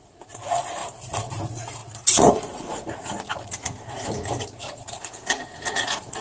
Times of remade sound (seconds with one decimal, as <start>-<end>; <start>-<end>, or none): 0.0-6.2